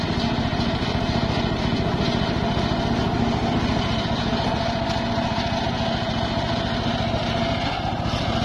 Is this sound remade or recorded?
recorded